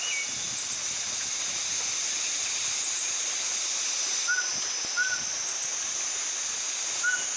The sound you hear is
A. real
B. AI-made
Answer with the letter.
A